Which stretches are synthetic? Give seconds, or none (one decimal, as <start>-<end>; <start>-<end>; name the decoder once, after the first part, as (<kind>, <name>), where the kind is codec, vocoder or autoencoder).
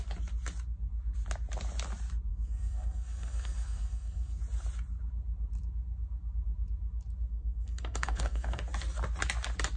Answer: 2.3-4.4 (codec, SNAC); 7.3-8.6